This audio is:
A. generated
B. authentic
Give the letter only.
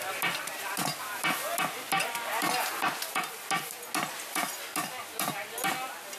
B